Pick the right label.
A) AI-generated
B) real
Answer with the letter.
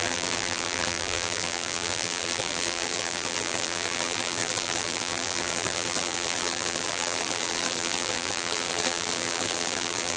A